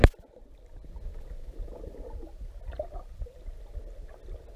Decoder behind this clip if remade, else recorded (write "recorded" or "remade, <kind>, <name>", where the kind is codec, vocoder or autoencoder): recorded